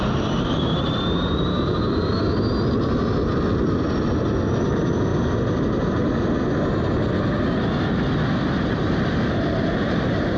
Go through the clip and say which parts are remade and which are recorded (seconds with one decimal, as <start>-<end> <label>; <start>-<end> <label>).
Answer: 0.0-2.1 remade; 2.1-4.2 recorded; 4.2-5.1 remade; 5.1-8.4 recorded; 8.4-10.4 remade